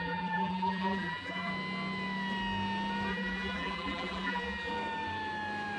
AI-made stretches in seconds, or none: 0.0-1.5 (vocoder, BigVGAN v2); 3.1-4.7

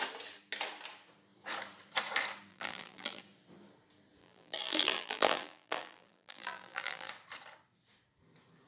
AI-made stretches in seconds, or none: 2.5-3.2 (vocoder, BigVGAN v2); 4.2-7.1